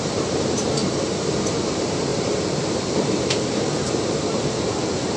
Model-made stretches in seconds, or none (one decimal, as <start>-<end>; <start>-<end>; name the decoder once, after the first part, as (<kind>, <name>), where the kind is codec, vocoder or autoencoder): 0.0-0.8 (vocoder, BigVGAN v2); 1.4-5.2